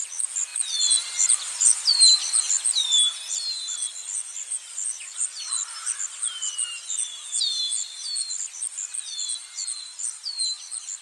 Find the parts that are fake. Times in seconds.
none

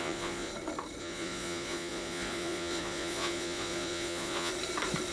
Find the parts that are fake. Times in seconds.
0.0-0.5 (vocoder, Vocos); 1.0-4.5

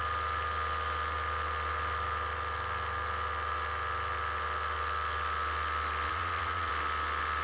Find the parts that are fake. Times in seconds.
6.1-6.7 (vocoder, Vocos)